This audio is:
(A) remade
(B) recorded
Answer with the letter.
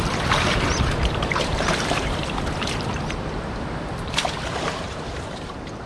A